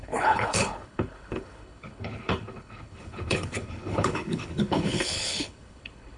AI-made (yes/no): yes